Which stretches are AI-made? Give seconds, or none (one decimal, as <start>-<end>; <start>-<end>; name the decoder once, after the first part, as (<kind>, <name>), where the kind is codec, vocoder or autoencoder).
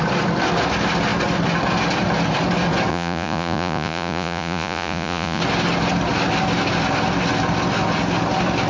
2.9-5.4 (vocoder, Vocos)